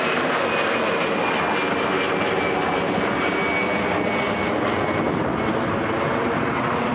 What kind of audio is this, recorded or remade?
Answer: recorded